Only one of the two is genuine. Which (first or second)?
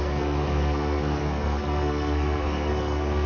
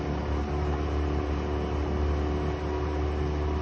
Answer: second